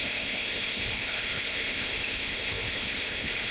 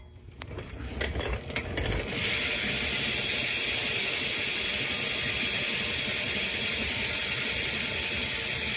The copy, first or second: first